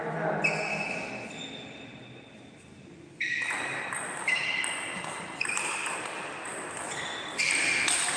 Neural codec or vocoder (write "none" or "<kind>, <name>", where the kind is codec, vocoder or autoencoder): none